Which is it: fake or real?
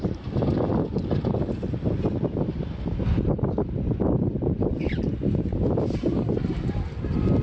real